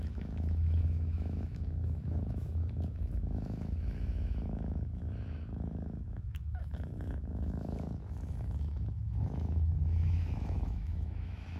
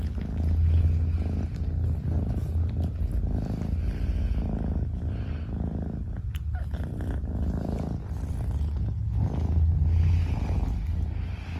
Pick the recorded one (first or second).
second